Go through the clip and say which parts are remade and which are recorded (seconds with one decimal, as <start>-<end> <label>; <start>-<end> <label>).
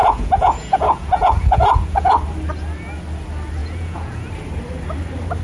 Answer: 0.0-2.1 remade; 2.1-3.6 recorded; 3.6-4.3 remade; 4.3-5.4 recorded